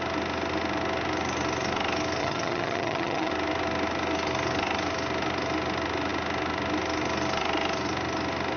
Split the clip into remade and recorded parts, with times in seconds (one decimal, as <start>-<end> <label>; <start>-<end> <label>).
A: 0.0-2.2 recorded; 2.2-3.3 remade; 3.3-8.6 recorded